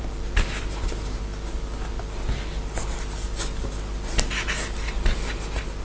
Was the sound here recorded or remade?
recorded